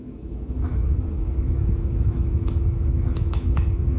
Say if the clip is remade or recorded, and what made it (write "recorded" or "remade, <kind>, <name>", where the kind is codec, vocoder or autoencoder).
remade, autoencoder, DAC-VAE